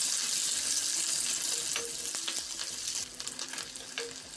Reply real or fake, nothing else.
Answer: real